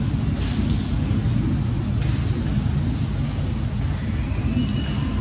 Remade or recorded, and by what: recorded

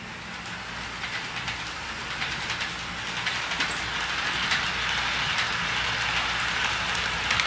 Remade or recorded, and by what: recorded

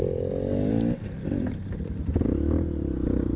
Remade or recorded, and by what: recorded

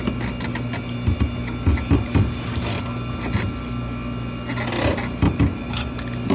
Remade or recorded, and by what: recorded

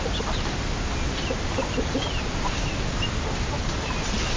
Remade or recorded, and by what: recorded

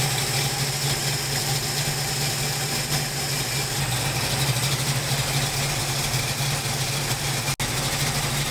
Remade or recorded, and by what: recorded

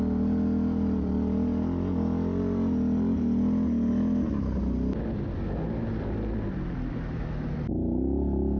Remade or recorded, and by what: recorded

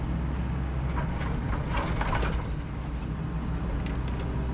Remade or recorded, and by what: recorded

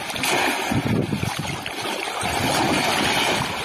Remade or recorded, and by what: recorded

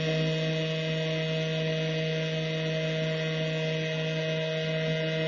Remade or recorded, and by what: recorded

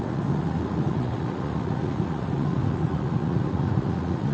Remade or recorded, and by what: remade, vocoder, Vocos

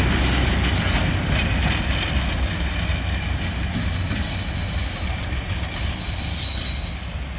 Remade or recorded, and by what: recorded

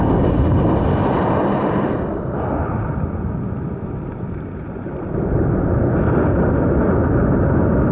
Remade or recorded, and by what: recorded